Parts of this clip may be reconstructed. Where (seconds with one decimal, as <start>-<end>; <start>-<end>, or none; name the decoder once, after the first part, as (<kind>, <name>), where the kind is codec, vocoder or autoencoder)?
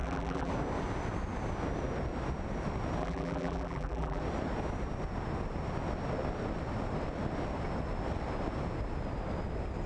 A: 0.0-0.5 (vocoder, BigVGAN v2); 3.0-4.2